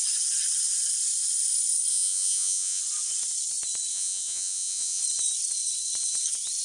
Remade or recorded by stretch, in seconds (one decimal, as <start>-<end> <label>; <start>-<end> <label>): 0.0-1.9 recorded; 1.9-2.8 remade; 2.8-3.9 recorded; 3.9-5.0 remade; 5.0-6.6 recorded